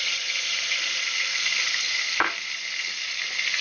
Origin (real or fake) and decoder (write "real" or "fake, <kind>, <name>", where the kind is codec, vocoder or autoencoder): real